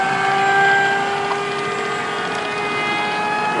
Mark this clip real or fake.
real